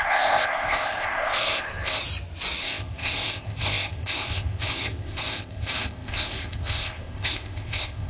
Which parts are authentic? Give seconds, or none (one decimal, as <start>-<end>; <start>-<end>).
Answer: 2.0-2.6